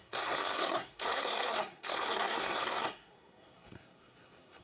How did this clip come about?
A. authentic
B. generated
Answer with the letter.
B